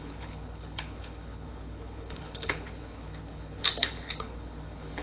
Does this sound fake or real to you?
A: fake